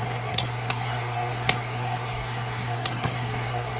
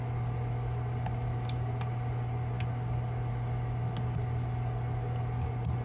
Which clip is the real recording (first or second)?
second